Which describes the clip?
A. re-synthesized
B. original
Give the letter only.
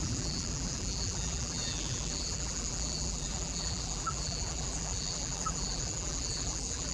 A